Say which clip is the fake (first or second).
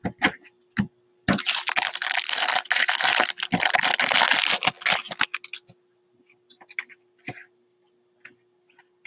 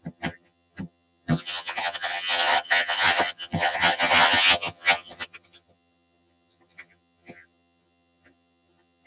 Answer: second